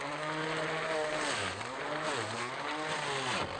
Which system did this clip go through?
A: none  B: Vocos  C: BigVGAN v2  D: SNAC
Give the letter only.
A